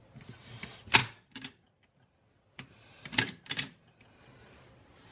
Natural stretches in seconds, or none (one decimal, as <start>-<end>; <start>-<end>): 0.0-1.0; 4.0-5.1